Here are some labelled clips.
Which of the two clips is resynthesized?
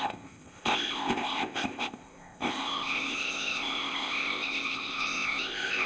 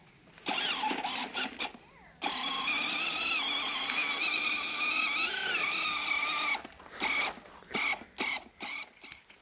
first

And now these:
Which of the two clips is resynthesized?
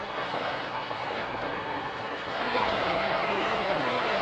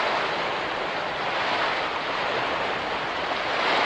first